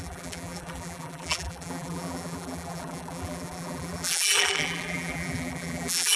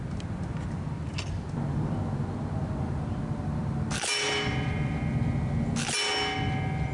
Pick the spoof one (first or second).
first